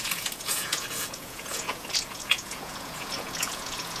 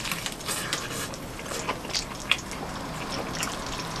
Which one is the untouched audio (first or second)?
second